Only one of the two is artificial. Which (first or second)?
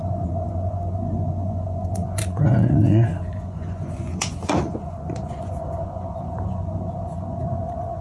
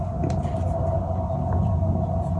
first